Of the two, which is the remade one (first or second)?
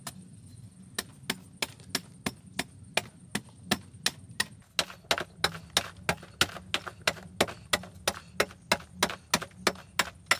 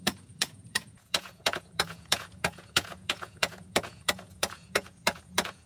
second